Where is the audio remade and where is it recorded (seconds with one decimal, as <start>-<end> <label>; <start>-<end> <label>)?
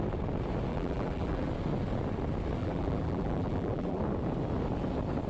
0.0-0.7 recorded; 0.7-1.5 remade; 1.5-2.6 recorded; 2.6-4.0 remade; 4.0-5.3 recorded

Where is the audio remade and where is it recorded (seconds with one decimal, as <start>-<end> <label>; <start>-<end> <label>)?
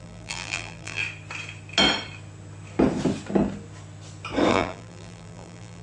0.0-1.0 remade; 1.0-4.5 recorded; 4.5-5.8 remade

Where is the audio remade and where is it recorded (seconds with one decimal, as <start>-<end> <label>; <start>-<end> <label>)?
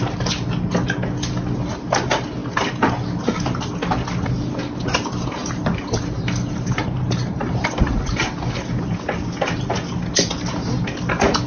0.0-5.4 recorded; 5.4-8.0 remade; 8.0-11.5 recorded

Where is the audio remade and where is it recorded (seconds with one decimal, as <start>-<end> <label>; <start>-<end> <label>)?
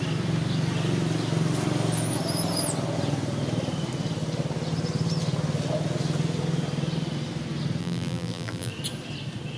0.0-7.8 recorded; 7.8-8.7 remade; 8.7-9.6 recorded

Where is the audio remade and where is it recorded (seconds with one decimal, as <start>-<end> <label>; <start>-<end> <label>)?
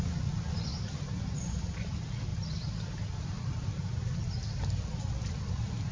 0.0-2.3 recorded; 2.3-5.3 remade; 5.3-5.9 recorded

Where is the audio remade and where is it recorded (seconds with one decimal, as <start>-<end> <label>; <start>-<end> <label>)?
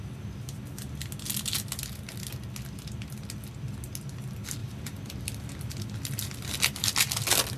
0.0-4.6 recorded; 4.6-7.0 remade; 7.0-7.6 recorded